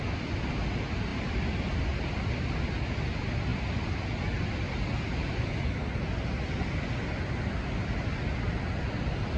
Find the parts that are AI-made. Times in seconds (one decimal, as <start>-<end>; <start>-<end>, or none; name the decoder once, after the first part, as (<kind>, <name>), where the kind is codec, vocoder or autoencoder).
none